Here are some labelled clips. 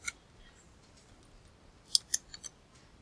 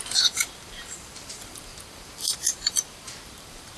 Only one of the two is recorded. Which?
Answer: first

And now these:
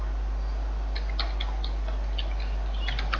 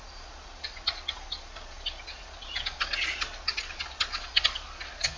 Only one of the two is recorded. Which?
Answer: first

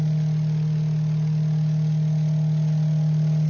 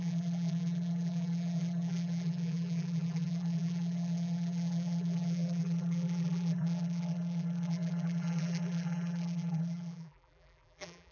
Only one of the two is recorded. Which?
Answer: first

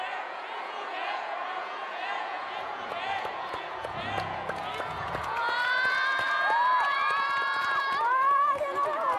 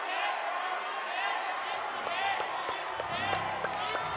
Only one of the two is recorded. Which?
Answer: second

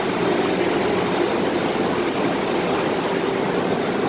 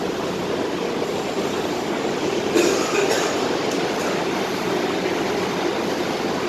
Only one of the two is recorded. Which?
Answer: first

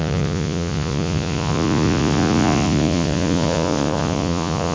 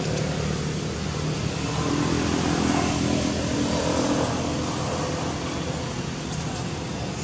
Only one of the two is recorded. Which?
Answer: second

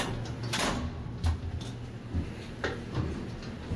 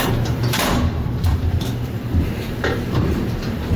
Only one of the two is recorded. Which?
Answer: first